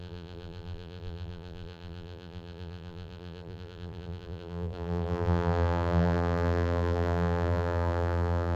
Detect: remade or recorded remade